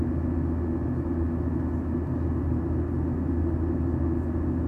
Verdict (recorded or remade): recorded